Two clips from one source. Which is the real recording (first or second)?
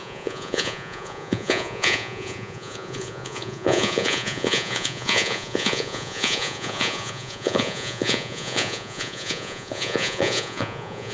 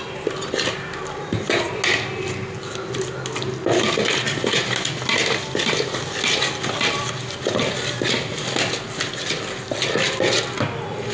second